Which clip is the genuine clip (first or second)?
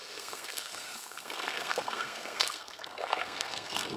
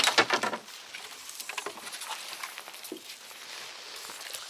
second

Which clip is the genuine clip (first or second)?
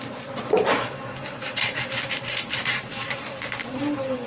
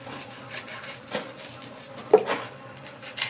second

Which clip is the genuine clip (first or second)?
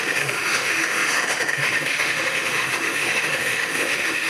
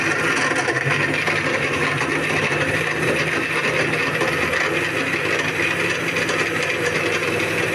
second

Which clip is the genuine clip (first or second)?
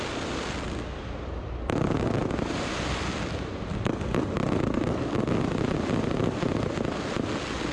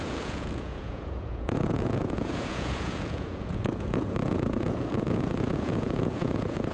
first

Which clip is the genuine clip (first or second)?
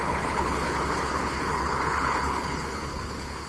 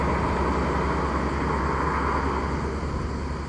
second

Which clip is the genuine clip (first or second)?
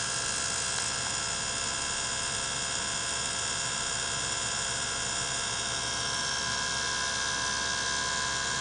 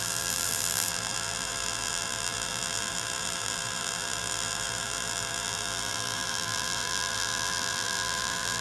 first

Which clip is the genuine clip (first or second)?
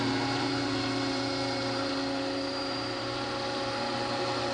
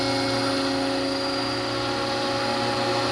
second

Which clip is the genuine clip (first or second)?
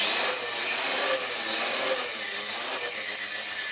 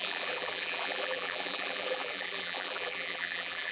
first